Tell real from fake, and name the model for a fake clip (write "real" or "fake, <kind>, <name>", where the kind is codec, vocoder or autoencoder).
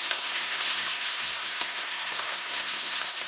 fake, codec, SNAC